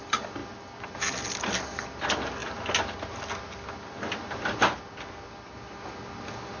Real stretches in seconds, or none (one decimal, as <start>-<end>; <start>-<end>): 0.0-6.6